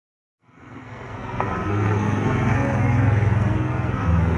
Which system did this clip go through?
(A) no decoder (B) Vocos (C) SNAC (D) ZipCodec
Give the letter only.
C